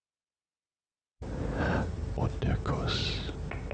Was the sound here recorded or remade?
recorded